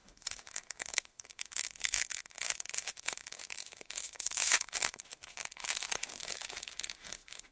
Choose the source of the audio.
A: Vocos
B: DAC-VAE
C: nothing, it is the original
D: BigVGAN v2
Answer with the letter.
B